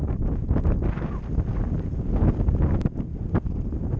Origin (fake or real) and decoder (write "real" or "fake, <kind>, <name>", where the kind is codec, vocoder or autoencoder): real